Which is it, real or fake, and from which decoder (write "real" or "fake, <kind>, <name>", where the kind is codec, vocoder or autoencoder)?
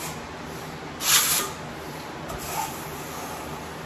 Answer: real